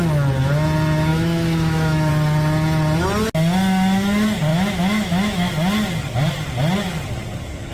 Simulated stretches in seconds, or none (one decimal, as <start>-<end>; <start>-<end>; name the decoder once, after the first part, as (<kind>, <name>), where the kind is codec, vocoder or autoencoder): 1.1-2.1 (autoencoder, DAC-VAE); 4.5-5.5

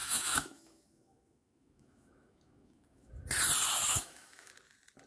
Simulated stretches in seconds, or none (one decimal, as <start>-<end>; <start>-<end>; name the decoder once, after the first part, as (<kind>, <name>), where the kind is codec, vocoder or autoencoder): 0.0-3.1 (autoencoder, DAC-VAE); 3.9-4.5

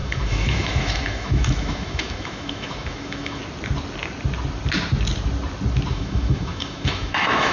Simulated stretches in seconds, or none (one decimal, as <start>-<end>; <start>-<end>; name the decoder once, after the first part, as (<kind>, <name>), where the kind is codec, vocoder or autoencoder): 0.0-3.4 (autoencoder, DAC-VAE); 5.9-7.5

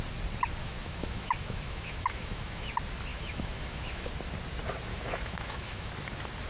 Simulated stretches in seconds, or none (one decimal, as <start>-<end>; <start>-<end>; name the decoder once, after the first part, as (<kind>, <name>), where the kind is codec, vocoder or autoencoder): 0.6-2.7 (autoencoder, DAC-VAE); 3.1-4.1; 4.9-5.9

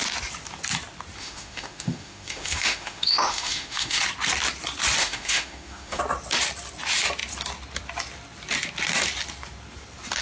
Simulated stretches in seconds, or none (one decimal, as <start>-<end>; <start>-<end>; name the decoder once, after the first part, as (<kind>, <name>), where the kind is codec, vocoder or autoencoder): 1.2-4.0 (autoencoder, DAC-VAE); 5.0-6.0